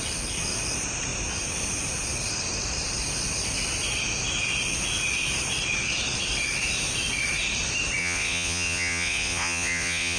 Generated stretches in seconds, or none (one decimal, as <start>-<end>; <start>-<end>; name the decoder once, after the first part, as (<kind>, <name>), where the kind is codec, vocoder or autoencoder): 8.0-10.2 (vocoder, Vocos)